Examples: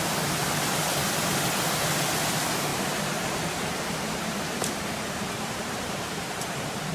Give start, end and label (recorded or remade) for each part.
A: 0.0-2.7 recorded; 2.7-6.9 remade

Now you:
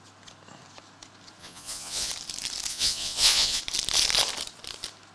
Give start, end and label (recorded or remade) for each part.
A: 0.0-1.4 recorded; 1.4-2.1 remade; 2.1-2.7 recorded; 2.7-3.6 remade; 3.6-5.1 recorded

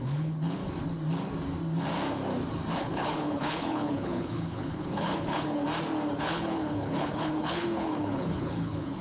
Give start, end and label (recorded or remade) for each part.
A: 0.0-0.6 remade; 0.6-2.8 recorded; 2.8-5.6 remade; 5.6-6.2 recorded; 6.2-9.0 remade

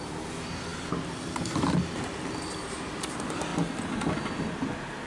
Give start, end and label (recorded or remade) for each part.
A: 0.0-5.1 recorded

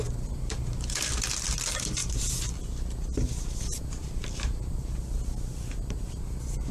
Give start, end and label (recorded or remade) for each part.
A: 0.0-6.7 recorded

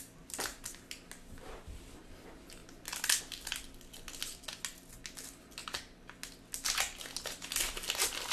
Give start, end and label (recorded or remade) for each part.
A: 0.0-8.3 recorded

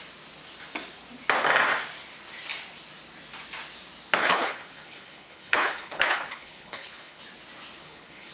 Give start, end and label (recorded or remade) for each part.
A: 0.0-4.2 recorded; 4.2-7.2 remade; 7.2-7.8 recorded; 7.8-8.3 remade